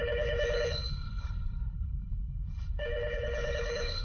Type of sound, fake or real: fake